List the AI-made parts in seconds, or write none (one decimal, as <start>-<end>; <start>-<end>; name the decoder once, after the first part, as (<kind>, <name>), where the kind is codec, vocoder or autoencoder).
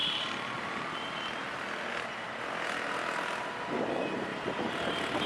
none